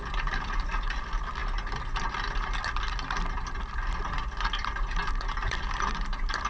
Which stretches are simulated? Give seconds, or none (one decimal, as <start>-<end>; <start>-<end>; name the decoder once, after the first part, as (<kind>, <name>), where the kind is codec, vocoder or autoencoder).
0.0-1.4 (vocoder, BigVGAN v2); 4.0-6.5